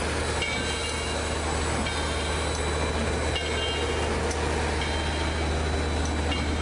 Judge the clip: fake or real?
real